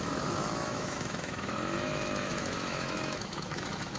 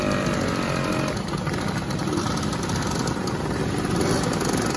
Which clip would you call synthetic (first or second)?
first